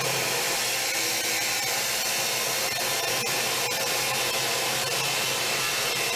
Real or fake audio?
real